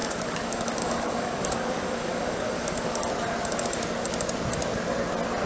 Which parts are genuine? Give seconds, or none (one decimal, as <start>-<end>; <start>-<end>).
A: 3.1-5.5